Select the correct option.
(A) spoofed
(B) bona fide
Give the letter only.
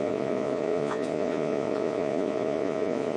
A